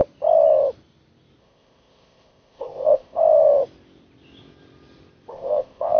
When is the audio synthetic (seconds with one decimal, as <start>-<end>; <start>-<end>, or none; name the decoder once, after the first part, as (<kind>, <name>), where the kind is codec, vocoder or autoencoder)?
1.4-3.2 (codec, ZipCodec); 5.3-6.0